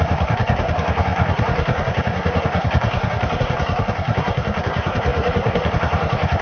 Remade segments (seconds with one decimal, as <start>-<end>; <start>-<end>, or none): 0.0-6.4